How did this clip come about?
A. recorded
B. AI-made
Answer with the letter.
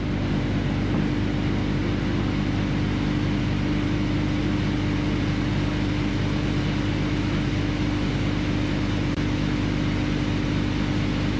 A